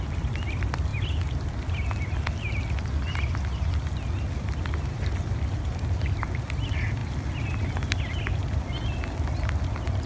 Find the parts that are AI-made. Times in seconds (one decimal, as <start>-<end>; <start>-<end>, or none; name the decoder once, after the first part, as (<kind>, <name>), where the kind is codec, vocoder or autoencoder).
none